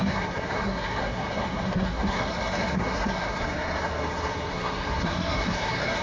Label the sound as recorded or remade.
remade